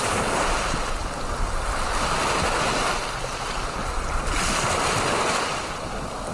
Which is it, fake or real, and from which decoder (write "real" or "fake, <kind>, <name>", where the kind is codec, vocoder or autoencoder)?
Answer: real